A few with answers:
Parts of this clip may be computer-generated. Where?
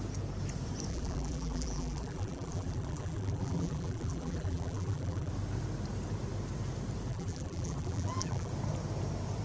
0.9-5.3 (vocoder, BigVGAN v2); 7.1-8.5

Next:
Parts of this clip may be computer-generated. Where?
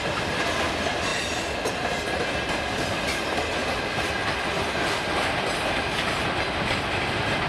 none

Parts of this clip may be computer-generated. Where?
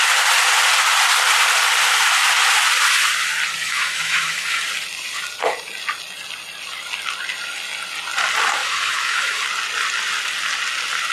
3.6-4.6 (autoencoder, DAC-VAE); 8.6-9.4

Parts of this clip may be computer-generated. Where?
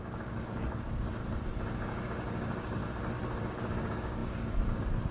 0.0-1.2 (codec, DAC); 1.9-2.8; 3.5-5.1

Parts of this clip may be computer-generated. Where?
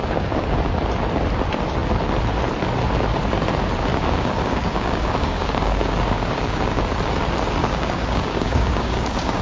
0.0-0.6 (codec, DAC); 3.9-6.8; 7.6-9.4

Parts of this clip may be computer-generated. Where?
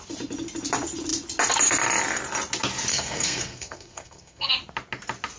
2.9-4.5 (codec, SNAC)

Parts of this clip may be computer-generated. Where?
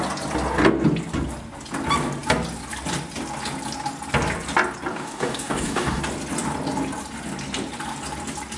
4.9-6.0 (codec, DAC)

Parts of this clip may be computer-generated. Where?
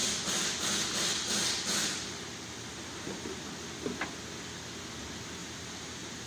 5.4-6.3 (vocoder, BigVGAN v2)